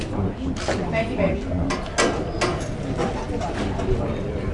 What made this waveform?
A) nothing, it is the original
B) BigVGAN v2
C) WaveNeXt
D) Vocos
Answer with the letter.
A